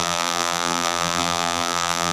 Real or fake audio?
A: fake